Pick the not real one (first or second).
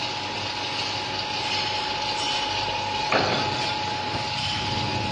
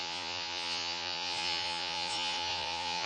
second